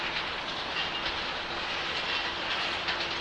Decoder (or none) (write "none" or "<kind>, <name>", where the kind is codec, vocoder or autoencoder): none